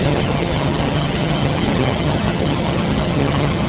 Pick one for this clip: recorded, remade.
remade